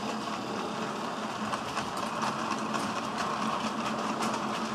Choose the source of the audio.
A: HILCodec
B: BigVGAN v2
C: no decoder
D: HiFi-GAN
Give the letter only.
C